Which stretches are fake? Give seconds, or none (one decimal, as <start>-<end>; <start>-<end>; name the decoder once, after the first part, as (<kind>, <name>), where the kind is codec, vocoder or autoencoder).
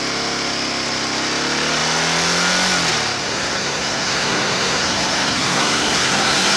3.2-6.6 (codec, SNAC)